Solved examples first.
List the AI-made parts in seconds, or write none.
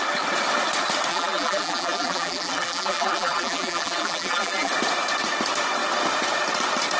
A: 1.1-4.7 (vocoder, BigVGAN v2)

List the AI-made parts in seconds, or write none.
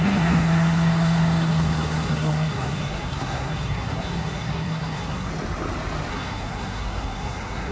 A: 0.0-5.3 (codec, SNAC); 6.1-7.7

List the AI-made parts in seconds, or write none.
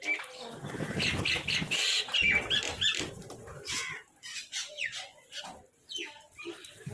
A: 4.3-5.4 (vocoder, Vocos)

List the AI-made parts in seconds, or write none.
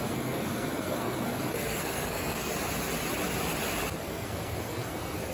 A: 0.0-2.5 (codec, SNAC); 4.0-5.3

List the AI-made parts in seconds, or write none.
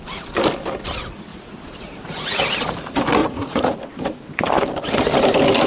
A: 1.3-2.4 (vocoder, Vocos); 3.2-3.8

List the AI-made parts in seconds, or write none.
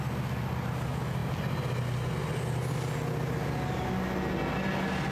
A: none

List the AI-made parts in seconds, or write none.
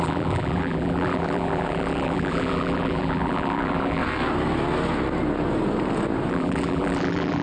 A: 0.0-4.0 (vocoder, BigVGAN v2); 6.3-7.4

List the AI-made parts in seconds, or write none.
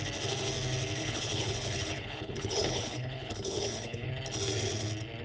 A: 1.0-4.1 (codec, HILCodec)